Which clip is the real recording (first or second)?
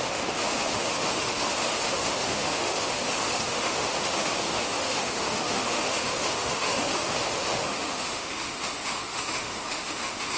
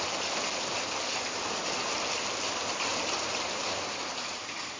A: second